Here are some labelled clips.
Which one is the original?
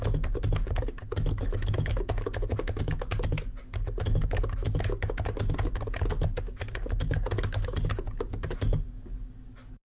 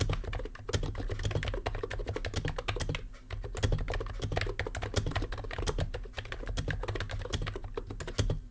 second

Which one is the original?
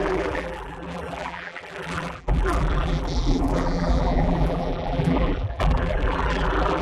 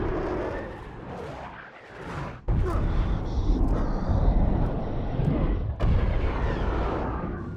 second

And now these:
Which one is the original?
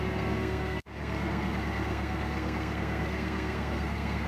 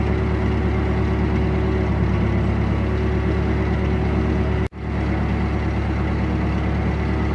second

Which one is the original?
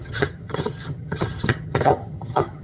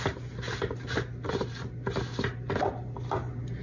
second